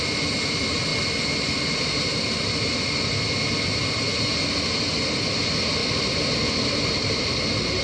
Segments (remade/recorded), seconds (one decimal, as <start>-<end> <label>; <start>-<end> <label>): 0.0-7.8 recorded